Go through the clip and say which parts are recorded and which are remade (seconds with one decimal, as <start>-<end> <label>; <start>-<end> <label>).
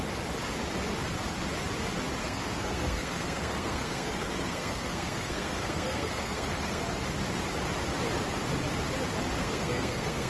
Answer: 0.0-2.2 recorded; 2.2-6.8 remade; 6.8-9.4 recorded; 9.4-10.3 remade